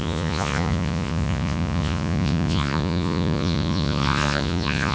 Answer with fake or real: fake